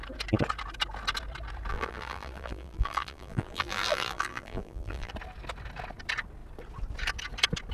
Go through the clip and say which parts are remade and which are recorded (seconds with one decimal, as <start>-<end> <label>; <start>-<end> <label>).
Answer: 0.0-1.7 recorded; 1.7-5.1 remade; 5.1-7.7 recorded